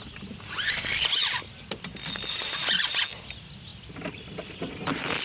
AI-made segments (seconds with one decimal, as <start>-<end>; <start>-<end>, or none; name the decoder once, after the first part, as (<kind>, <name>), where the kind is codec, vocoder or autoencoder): none